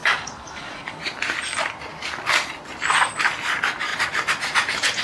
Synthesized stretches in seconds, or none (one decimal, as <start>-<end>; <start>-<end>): 0.0-1.0